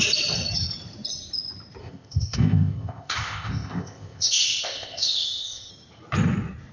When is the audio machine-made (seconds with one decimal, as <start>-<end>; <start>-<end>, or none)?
1.8-5.7